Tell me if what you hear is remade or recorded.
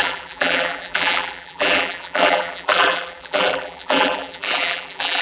remade